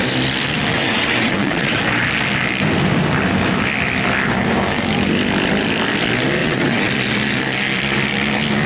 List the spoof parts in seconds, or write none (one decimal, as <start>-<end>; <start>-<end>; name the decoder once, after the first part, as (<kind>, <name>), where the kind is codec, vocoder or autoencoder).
0.7-1.8 (vocoder, WaveNeXt); 6.4-6.9